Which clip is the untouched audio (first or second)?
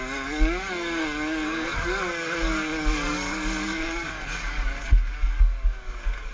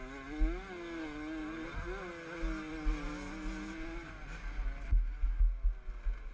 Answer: second